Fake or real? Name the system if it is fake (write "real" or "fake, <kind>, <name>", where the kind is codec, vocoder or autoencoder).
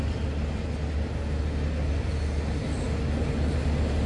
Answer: real